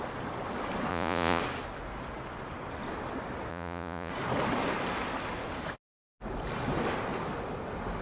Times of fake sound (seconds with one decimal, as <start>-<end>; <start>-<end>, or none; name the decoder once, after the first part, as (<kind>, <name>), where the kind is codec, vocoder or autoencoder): 0.9-1.4 (vocoder, Vocos); 3.5-4.1